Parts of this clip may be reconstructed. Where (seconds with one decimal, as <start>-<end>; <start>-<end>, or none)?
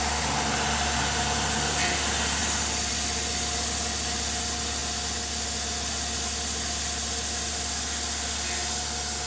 none